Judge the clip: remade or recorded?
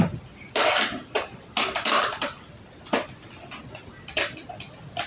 recorded